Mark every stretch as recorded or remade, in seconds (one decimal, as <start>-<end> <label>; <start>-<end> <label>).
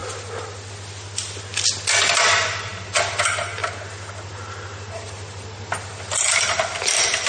0.0-7.3 recorded